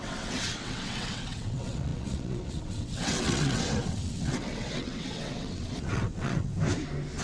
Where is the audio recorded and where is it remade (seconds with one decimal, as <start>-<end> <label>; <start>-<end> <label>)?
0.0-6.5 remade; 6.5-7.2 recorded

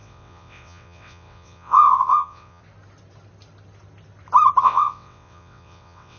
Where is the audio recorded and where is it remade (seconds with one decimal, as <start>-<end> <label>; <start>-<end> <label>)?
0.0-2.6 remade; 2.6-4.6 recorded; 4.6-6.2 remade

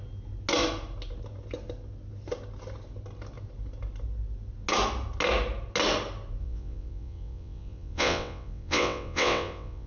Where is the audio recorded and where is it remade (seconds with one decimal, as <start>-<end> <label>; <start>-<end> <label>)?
0.0-6.4 recorded; 6.4-9.9 remade